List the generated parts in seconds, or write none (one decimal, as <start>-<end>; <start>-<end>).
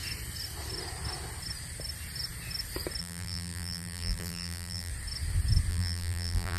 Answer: 3.0-4.9; 5.7-6.6